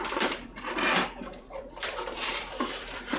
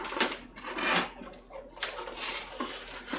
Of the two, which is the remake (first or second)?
first